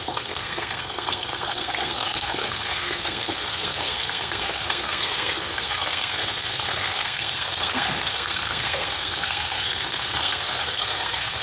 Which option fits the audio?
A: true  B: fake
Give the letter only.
B